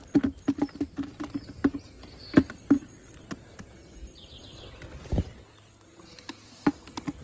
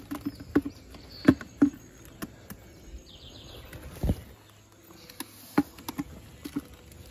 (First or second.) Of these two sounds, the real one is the second